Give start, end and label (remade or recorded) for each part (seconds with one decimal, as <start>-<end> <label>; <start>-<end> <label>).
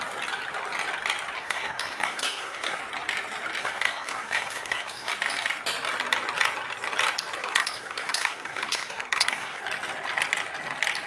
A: 0.0-1.4 recorded; 1.4-2.8 remade; 2.8-3.6 recorded; 3.6-5.1 remade; 5.1-7.4 recorded; 7.4-9.6 remade; 9.6-11.1 recorded